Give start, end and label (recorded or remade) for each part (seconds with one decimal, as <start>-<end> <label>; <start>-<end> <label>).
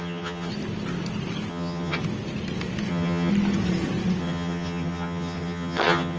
0.0-0.5 remade; 0.5-1.5 recorded; 1.5-2.0 remade; 2.0-2.9 recorded; 2.9-3.3 remade; 3.3-4.2 recorded; 4.2-6.2 remade